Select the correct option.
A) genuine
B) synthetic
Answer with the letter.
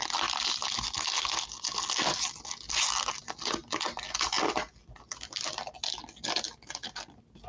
A